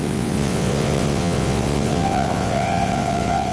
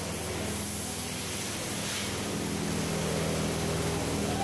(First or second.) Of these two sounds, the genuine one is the second